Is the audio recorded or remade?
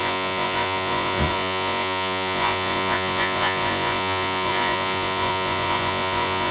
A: remade